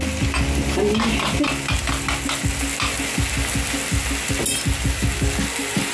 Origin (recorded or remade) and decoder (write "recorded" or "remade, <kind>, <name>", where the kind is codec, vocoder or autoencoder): recorded